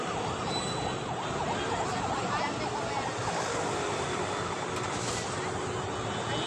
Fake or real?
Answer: real